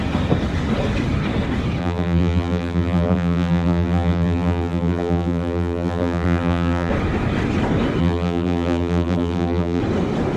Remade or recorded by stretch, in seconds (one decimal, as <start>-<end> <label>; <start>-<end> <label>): 0.0-1.8 recorded; 1.8-6.9 remade; 6.9-8.0 recorded; 8.0-9.8 remade; 9.8-10.4 recorded